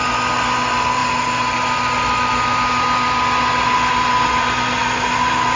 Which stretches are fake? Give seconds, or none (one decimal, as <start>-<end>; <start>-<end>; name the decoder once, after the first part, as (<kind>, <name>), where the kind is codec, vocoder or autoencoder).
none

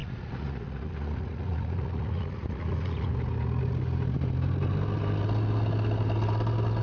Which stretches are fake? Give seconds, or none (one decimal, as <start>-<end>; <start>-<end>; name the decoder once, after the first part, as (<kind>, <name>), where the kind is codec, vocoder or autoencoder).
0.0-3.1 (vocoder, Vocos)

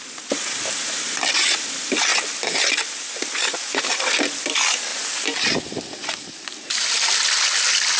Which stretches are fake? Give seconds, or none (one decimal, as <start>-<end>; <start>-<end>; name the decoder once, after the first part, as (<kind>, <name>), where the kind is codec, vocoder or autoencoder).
0.0-2.1 (vocoder, BigVGAN v2); 2.7-4.9; 6.6-8.0

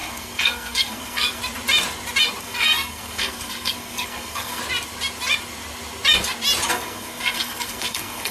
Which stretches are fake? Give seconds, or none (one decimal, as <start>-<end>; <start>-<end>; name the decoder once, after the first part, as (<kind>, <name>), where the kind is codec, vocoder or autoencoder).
0.0-1.4 (codec, SNAC); 2.4-4.6; 6.7-8.3

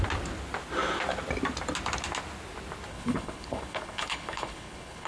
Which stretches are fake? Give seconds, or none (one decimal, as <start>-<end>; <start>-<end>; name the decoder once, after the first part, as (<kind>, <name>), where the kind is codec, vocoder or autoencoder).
2.9-5.1 (codec, HILCodec)

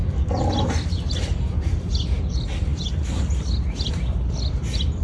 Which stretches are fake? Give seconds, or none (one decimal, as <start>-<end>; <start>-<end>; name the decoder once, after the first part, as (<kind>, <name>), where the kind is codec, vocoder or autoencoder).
none